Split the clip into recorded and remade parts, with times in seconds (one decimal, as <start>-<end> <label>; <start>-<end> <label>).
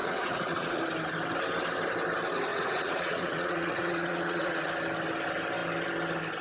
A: 0.0-0.8 remade; 0.8-2.5 recorded; 2.5-4.7 remade; 4.7-6.4 recorded